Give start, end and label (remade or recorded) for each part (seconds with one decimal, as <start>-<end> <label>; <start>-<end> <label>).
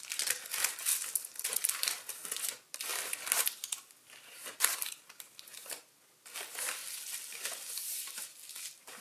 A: 0.0-0.9 recorded; 0.9-2.4 remade; 2.4-2.9 recorded; 2.9-6.2 remade; 6.2-9.0 recorded